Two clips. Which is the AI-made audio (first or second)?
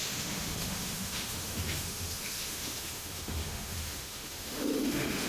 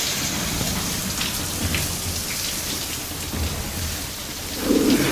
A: first